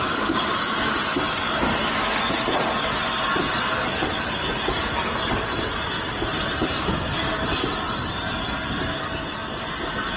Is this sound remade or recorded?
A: recorded